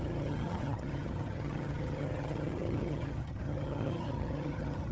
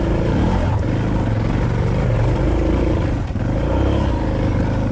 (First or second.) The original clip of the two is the second